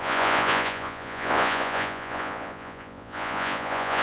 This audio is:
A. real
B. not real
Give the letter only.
B